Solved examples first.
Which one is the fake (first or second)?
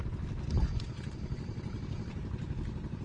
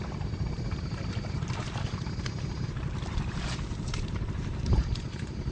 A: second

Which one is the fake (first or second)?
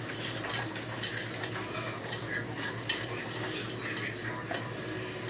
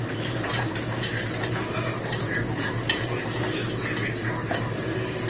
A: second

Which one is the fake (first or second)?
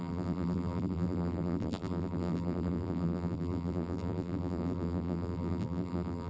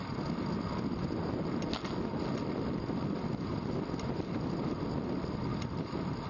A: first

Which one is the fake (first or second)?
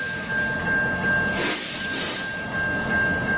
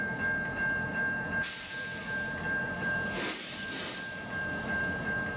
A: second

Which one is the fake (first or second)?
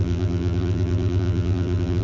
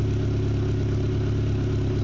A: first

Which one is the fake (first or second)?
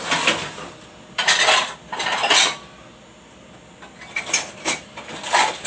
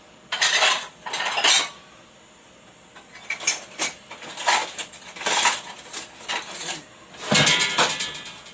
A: first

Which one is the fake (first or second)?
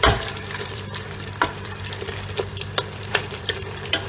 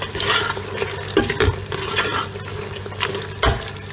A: first